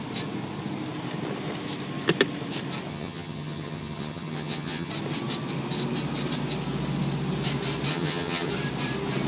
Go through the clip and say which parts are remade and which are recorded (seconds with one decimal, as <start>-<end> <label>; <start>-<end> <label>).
0.0-2.9 recorded; 2.9-4.9 remade; 4.9-7.9 recorded; 7.9-8.5 remade; 8.5-9.3 recorded